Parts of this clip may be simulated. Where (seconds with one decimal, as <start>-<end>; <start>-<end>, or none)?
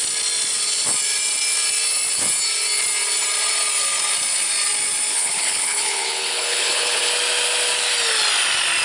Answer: 5.1-7.1